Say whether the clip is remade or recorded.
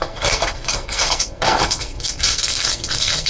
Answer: remade